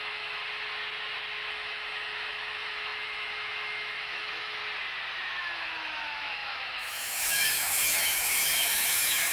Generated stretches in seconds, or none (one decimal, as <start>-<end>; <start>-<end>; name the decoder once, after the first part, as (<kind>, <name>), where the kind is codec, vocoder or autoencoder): 0.0-0.4 (autoencoder, DAC-VAE); 1.5-4.6; 5.4-9.3